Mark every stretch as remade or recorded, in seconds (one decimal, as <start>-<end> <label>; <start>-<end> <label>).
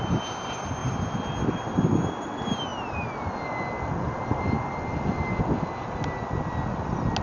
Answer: 0.0-7.2 recorded